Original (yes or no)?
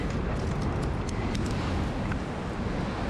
yes